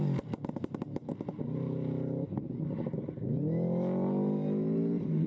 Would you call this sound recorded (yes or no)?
yes